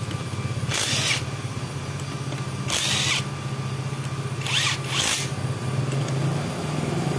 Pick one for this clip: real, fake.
real